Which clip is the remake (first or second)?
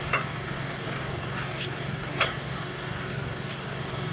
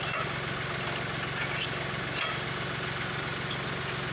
first